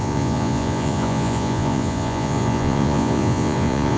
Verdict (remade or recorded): remade